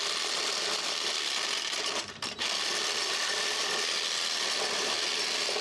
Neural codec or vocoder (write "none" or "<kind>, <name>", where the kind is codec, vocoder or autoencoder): none